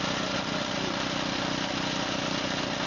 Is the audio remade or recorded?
recorded